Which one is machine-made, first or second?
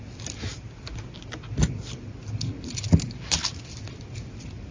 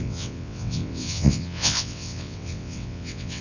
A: second